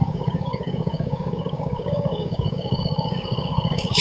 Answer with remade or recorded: remade